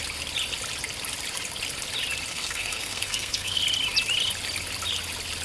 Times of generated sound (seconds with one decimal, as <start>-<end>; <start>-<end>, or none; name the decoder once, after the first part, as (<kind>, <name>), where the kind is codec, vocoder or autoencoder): 2.3-3.6 (codec, SNAC)